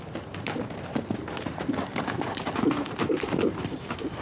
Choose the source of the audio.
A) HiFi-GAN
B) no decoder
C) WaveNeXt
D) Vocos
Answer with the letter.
B